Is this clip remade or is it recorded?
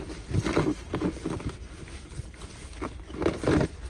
recorded